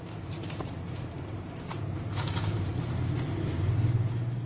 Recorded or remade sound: remade